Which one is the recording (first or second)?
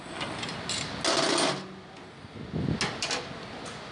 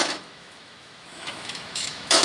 first